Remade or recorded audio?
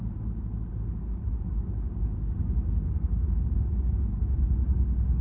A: remade